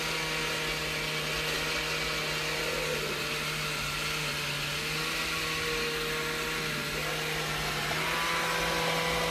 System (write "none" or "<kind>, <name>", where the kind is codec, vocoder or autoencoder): none